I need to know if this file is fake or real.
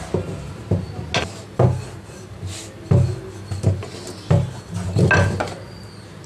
real